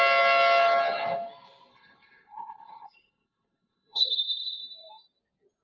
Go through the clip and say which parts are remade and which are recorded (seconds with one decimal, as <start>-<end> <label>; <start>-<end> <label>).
0.0-1.7 recorded; 1.7-4.6 remade; 4.6-5.6 recorded